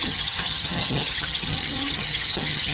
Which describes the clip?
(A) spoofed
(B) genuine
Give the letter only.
A